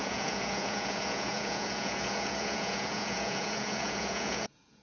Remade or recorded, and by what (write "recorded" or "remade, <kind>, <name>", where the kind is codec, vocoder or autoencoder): remade, vocoder, Vocos